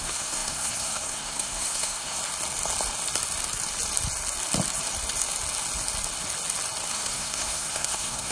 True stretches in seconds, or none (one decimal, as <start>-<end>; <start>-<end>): 2.2-6.9